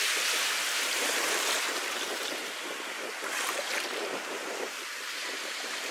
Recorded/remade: remade